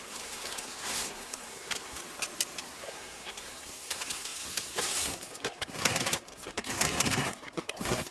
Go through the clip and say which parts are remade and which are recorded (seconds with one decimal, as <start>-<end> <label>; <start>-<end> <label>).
0.0-2.0 remade; 2.0-2.6 recorded; 2.6-8.1 remade